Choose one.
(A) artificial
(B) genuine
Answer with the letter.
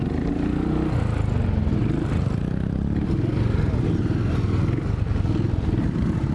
B